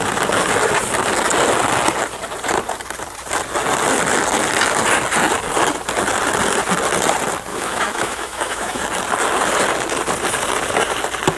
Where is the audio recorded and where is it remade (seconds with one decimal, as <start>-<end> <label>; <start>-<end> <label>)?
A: 0.0-7.5 recorded; 7.5-8.8 remade; 8.8-11.4 recorded